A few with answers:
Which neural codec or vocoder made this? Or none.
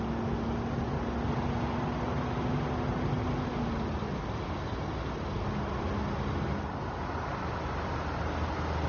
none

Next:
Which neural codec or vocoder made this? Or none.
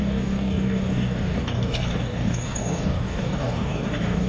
codec, DAC